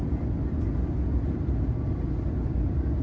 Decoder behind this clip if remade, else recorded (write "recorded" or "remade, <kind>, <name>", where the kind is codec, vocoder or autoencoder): recorded